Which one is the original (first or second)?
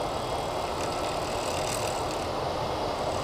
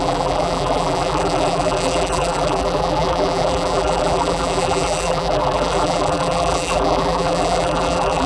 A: first